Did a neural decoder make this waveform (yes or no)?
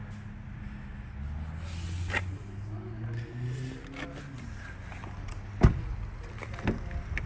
no